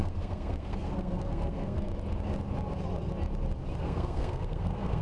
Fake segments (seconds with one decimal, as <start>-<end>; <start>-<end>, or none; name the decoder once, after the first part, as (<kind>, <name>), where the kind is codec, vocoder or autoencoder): 0.0-1.9 (codec, SNAC); 3.8-5.0